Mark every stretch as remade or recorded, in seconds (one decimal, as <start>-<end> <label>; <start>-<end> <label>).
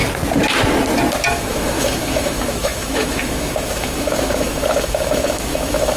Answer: 0.0-1.3 recorded; 1.3-6.0 remade